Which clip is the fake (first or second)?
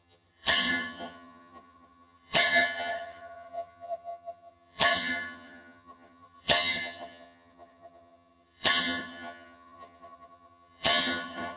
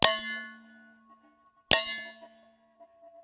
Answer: first